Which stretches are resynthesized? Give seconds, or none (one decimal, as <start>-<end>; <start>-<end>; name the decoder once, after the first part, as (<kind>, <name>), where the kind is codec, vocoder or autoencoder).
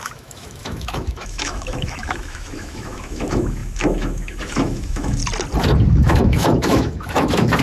0.0-5.2 (autoencoder, DAC-VAE); 5.9-7.6